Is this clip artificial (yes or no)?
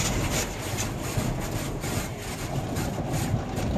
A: no